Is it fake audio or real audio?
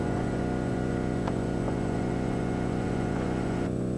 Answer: fake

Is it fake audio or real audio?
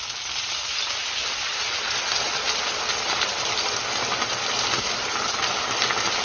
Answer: real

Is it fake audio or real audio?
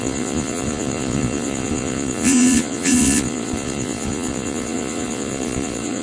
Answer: fake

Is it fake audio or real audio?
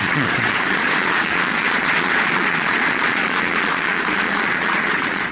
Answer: fake